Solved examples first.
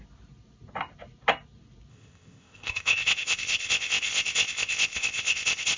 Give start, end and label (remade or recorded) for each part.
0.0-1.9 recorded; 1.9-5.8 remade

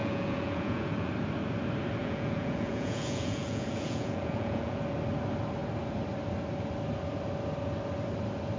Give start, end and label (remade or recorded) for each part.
0.0-1.1 remade; 1.1-2.0 recorded; 2.0-4.8 remade; 4.8-8.6 recorded

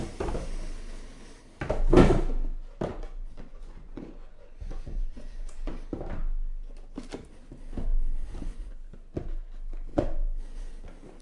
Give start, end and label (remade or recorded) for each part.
0.0-2.9 recorded; 2.9-5.7 remade; 5.7-7.9 recorded; 7.9-8.8 remade; 8.8-9.9 recorded; 9.9-10.7 remade; 10.7-11.2 recorded